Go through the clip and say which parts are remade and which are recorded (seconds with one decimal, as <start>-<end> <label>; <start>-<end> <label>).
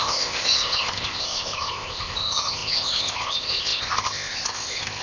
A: 0.0-5.0 remade